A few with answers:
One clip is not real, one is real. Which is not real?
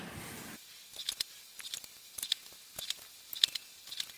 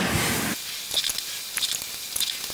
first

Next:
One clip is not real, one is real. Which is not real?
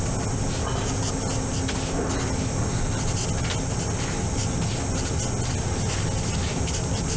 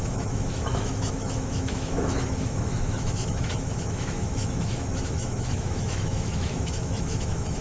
second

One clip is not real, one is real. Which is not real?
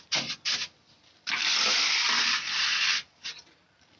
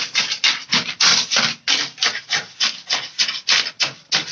first